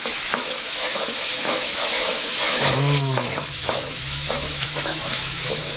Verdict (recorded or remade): remade